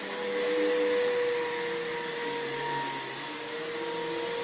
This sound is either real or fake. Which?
real